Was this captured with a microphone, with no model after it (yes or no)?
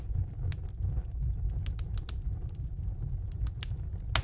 yes